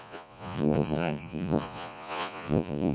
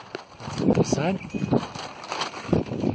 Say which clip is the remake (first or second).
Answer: first